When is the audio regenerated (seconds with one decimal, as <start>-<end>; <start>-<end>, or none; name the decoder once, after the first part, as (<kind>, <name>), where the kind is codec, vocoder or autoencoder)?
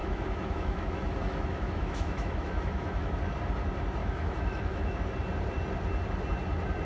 0.0-3.2 (autoencoder, DAC-VAE); 4.0-5.0